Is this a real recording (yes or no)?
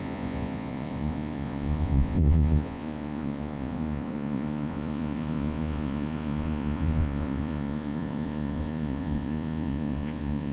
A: no